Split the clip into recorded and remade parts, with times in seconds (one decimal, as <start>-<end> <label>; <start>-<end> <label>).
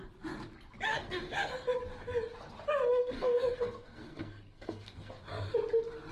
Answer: 0.0-0.9 recorded; 0.9-1.5 remade; 1.5-2.9 recorded; 2.9-5.2 remade; 5.2-6.1 recorded